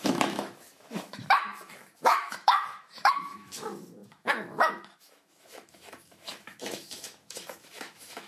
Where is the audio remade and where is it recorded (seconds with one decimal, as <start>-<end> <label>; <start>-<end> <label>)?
0.0-8.3 remade